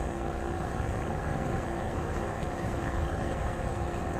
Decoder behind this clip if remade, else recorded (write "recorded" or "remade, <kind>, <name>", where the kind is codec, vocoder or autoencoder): remade, codec, SNAC